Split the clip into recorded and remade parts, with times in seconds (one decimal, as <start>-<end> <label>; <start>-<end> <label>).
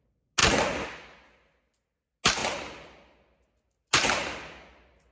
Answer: 0.0-5.1 recorded